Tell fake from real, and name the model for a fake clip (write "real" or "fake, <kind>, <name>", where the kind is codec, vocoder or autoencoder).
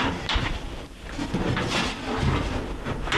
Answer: fake, vocoder, BigVGAN v2